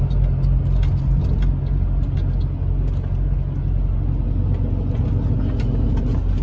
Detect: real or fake real